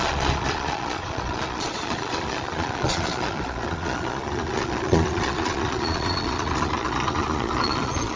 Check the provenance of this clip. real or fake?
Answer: fake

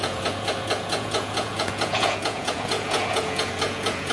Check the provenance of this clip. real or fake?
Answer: fake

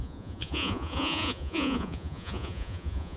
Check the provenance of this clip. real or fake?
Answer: fake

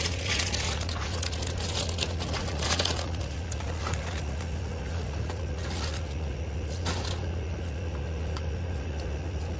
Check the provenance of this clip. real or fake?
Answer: fake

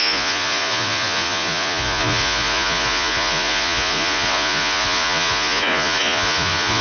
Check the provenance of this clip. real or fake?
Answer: fake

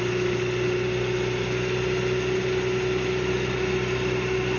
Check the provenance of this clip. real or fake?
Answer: real